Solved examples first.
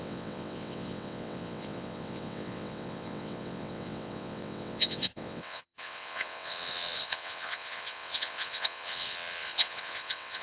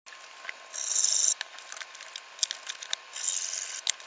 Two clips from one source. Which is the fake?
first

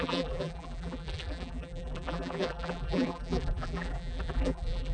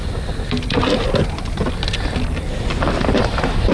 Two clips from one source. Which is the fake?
first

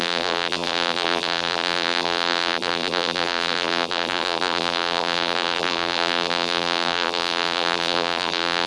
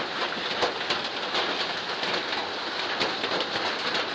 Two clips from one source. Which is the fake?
first